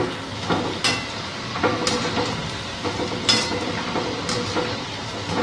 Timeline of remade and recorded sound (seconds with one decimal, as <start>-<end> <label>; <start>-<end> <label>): 0.0-5.4 recorded